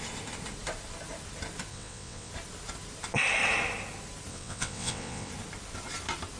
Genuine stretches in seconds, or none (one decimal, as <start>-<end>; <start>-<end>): 0.0-1.7; 2.3-4.3; 5.3-6.4